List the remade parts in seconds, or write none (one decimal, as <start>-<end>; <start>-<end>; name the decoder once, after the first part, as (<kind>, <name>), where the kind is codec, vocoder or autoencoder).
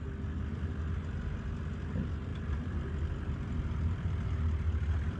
0.5-1.7 (vocoder, BigVGAN v2); 2.3-5.2